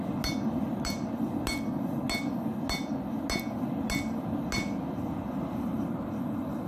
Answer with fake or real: real